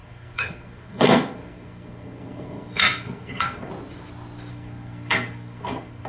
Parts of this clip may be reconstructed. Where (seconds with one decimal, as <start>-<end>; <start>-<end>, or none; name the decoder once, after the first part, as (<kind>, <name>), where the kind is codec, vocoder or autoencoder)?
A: 0.0-3.7 (codec, SNAC); 4.5-6.1